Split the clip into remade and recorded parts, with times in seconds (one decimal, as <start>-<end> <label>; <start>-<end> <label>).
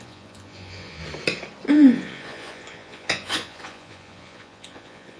0.0-1.0 remade; 1.0-1.7 recorded; 1.7-5.2 remade